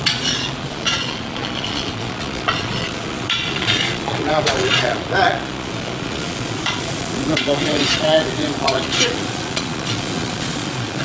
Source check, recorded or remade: remade